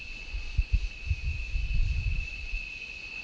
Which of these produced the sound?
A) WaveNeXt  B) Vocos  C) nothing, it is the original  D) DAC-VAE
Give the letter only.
B